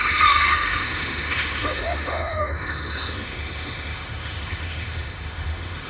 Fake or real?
fake